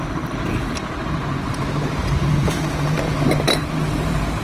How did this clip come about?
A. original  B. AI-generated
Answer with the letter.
B